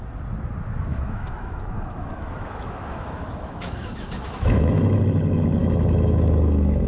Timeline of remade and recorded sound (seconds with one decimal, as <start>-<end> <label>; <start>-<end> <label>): 0.0-0.9 recorded; 0.9-5.0 remade; 5.0-5.6 recorded; 5.6-6.9 remade